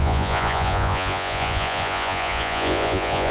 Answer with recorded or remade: remade